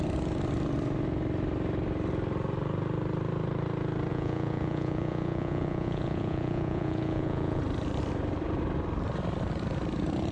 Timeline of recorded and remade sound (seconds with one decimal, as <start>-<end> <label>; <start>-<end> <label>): 0.0-4.1 recorded; 4.1-7.6 remade; 7.6-10.3 recorded

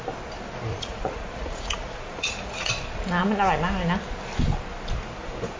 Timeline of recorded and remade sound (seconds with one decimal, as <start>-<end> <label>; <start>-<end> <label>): 0.0-0.7 recorded; 0.7-2.7 remade; 2.7-5.6 recorded

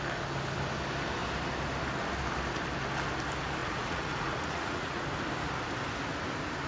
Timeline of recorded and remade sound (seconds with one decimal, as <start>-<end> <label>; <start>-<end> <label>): 0.0-3.6 recorded; 3.6-5.0 remade; 5.0-6.7 recorded

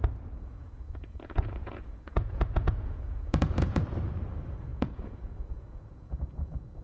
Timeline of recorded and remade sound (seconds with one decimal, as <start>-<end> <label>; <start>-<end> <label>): 0.0-0.6 recorded; 0.6-3.8 remade; 3.8-4.7 recorded; 4.7-6.8 remade